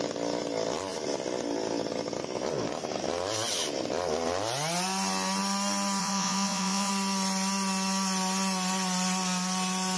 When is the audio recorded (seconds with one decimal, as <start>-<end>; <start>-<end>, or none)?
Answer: 0.0-6.0; 6.9-10.0